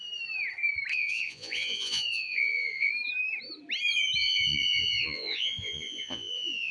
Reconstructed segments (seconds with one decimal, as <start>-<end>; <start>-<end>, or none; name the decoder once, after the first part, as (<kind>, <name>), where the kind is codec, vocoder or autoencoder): 0.9-2.9 (vocoder, Vocos); 4.2-6.7